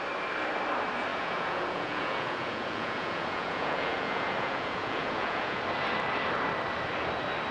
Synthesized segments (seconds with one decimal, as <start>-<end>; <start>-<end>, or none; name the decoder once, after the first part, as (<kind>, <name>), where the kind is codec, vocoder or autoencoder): 1.1-5.6 (vocoder, Vocos)